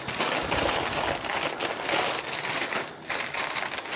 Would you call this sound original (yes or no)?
yes